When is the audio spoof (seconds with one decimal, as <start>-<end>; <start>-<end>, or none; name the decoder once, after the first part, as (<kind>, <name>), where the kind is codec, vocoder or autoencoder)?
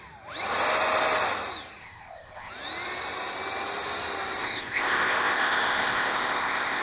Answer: 1.8-2.5 (codec, ZipCodec); 4.4-6.8